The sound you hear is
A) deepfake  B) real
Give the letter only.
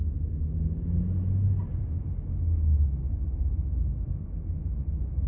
B